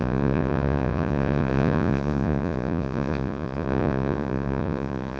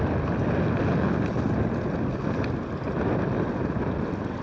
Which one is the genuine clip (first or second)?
second